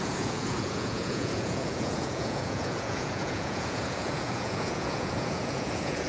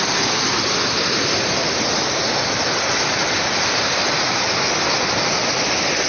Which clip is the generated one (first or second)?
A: first